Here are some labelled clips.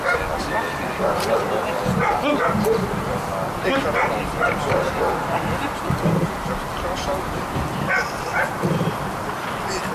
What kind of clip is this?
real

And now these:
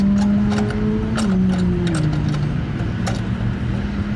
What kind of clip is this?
real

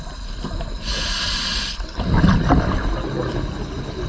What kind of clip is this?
real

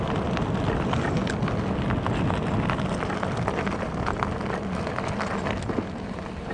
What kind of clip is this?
real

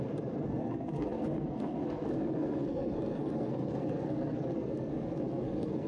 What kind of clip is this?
fake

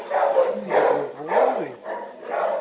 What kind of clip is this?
real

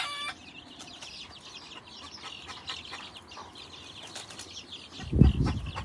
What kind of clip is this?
real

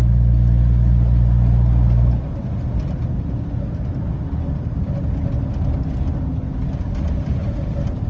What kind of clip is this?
real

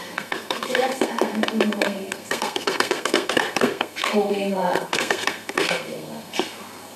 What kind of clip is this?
fake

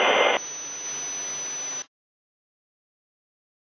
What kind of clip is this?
real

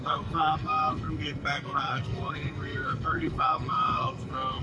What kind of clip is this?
fake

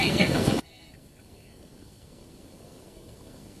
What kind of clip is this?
fake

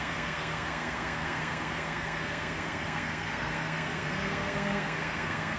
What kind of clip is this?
fake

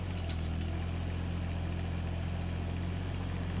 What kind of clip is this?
real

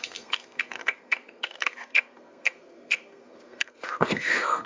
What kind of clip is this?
fake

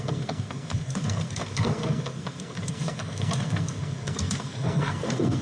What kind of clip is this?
fake